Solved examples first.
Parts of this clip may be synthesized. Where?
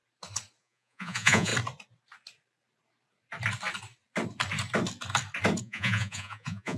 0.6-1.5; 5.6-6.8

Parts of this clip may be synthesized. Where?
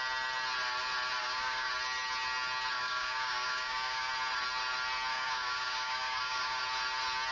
1.2-1.7; 2.8-4.1; 5.1-6.6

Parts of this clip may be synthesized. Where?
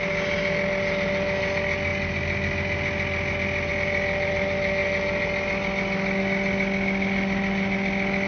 none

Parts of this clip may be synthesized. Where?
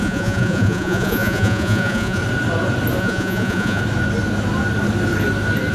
0.0-2.2; 3.0-3.8